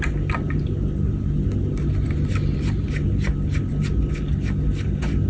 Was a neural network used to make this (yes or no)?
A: no